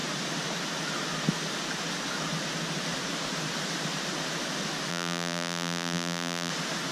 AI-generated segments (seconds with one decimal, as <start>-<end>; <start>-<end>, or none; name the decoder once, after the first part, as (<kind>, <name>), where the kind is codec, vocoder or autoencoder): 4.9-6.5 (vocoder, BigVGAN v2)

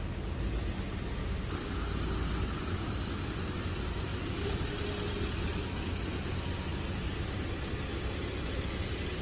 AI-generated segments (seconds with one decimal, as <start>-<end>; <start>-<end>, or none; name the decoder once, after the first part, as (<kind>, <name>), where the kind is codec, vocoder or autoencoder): 1.2-3.5 (vocoder, BigVGAN v2); 4.1-4.7

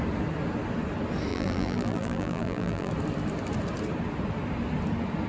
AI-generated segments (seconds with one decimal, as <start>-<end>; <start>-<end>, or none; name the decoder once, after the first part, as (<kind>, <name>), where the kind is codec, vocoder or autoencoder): 1.3-2.9 (vocoder, BigVGAN v2)